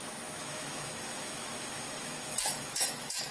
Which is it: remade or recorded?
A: remade